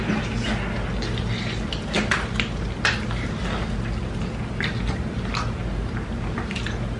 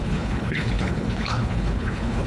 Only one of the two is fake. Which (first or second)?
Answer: second